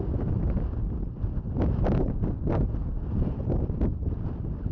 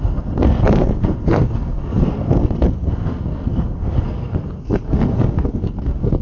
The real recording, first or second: first